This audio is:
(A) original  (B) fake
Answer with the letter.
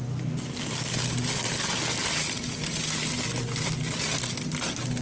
A